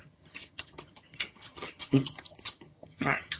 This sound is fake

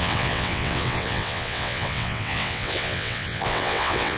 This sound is fake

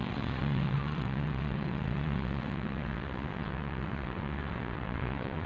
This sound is fake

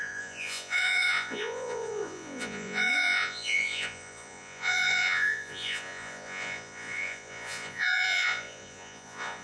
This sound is fake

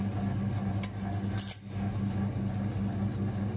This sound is real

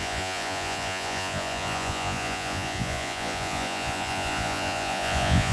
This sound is fake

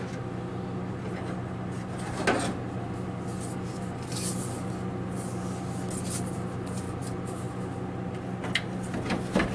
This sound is real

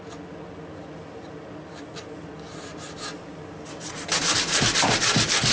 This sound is real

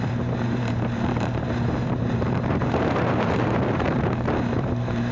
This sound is fake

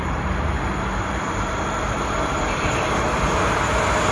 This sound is fake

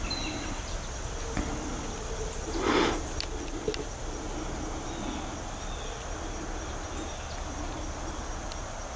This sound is real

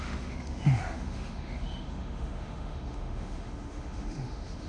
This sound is fake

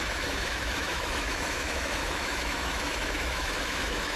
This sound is fake